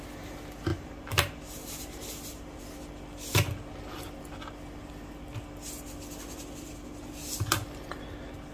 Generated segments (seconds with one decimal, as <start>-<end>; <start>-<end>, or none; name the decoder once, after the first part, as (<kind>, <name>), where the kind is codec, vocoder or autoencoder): 0.7-2.6 (vocoder, BigVGAN v2)